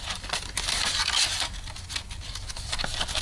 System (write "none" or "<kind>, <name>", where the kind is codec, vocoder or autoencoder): none